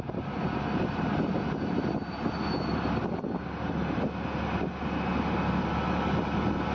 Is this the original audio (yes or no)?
yes